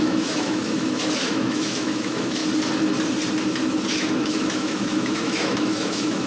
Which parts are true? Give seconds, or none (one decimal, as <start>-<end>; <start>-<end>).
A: 2.4-3.9